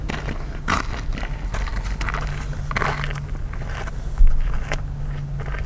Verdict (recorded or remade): recorded